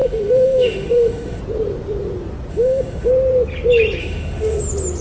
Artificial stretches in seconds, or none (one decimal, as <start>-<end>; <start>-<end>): 0.0-1.4; 2.5-3.1; 4.0-4.6